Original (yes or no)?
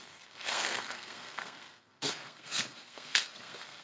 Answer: no